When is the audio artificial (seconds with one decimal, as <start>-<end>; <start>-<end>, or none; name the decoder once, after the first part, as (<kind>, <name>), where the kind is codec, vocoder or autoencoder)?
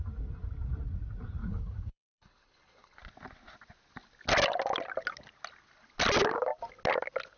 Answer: 1.4-3.0 (codec, HILCodec)